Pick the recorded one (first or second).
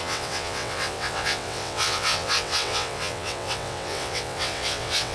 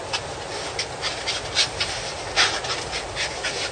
second